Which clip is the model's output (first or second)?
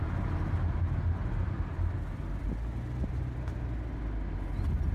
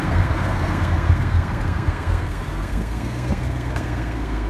second